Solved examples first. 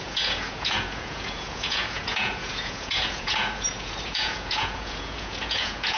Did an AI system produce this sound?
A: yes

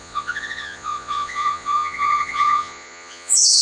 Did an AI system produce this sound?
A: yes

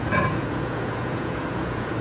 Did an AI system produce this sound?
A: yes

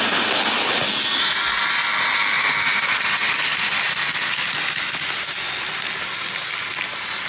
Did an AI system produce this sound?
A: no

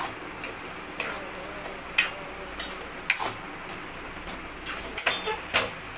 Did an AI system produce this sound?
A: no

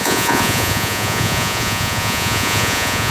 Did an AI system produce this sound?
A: yes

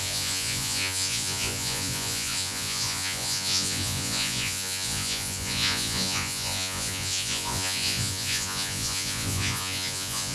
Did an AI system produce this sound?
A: yes